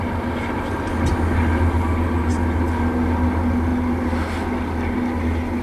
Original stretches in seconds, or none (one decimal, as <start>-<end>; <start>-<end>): 0.0-5.6